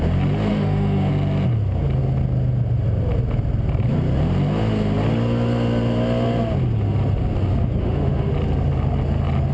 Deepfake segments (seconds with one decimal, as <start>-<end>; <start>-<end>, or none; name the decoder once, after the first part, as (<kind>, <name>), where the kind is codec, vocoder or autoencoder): 0.5-1.1 (autoencoder, DAC-VAE); 7.8-8.3